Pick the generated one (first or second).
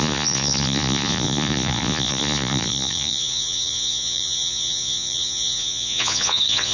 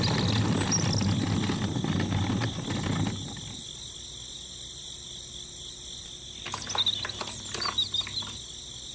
first